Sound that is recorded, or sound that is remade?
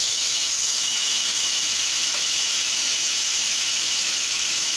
remade